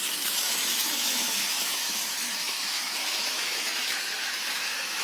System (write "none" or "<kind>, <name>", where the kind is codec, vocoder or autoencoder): autoencoder, DAC-VAE